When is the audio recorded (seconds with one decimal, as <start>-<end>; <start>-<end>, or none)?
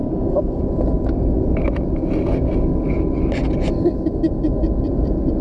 0.6-5.4